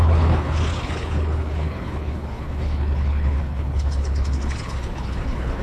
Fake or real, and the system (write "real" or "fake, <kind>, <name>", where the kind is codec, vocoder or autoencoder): fake, codec, HILCodec